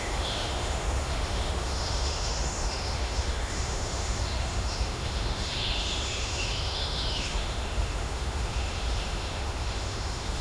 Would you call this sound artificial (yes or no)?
yes